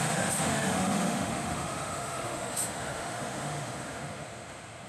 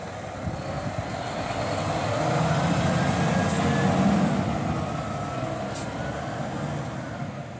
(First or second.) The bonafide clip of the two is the second